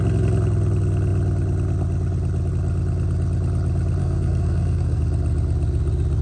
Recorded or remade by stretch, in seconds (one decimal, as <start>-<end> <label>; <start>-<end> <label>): 0.0-4.0 recorded; 4.0-5.0 remade; 5.0-6.2 recorded